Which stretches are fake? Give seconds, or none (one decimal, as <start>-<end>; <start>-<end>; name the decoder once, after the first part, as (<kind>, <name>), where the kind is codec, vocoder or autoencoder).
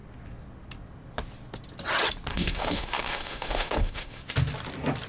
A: 2.3-4.2 (autoencoder, DAC-VAE)